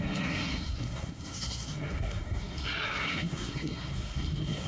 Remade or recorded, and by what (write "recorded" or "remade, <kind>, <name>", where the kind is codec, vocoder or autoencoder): remade, codec, SNAC